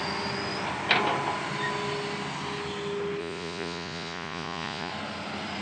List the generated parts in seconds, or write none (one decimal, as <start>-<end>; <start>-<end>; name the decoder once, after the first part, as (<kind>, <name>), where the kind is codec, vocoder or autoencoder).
3.2-4.9 (vocoder, Vocos)